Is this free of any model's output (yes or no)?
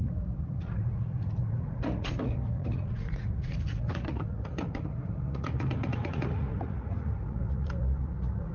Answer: no